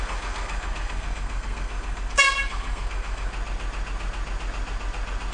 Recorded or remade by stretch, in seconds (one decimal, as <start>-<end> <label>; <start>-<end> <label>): 0.0-3.3 remade; 3.3-5.3 recorded